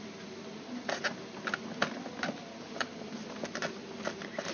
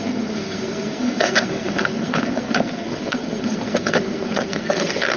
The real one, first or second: first